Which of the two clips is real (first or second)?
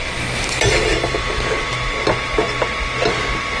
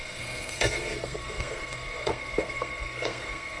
first